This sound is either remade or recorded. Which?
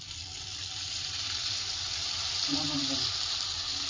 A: remade